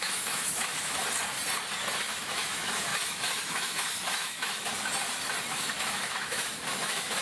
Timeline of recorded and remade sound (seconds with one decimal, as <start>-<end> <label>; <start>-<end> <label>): 0.0-1.0 remade; 1.0-2.0 recorded; 2.0-4.7 remade; 4.7-5.5 recorded; 5.5-7.2 remade